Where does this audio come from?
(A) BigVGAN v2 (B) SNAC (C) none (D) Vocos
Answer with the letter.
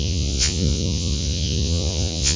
D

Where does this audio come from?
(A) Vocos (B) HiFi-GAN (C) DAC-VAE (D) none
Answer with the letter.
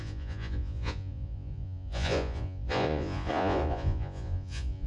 A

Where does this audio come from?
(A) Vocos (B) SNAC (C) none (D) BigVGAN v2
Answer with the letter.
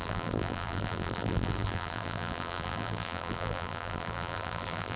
D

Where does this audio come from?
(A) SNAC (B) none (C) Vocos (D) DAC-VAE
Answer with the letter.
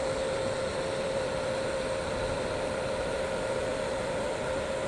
B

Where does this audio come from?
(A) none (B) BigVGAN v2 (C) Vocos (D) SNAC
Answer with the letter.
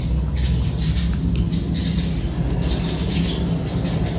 A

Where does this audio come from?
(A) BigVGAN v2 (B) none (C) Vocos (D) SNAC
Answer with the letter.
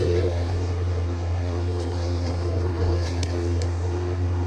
D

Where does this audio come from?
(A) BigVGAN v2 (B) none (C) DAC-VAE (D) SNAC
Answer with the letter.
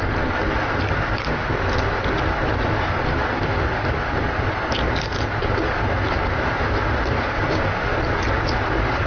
B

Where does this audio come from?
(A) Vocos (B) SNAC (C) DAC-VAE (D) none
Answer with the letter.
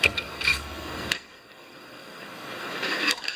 B